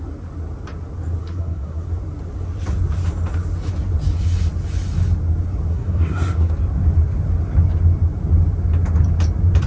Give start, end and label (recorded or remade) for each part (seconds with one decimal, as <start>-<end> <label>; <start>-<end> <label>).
0.0-1.2 recorded; 1.2-1.9 remade; 1.9-5.7 recorded; 5.7-6.5 remade; 6.5-9.7 recorded